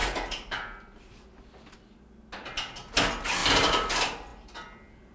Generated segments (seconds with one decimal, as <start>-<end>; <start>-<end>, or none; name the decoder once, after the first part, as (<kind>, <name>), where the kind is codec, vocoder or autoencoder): 0.0-1.2 (vocoder, BigVGAN v2); 3.4-3.9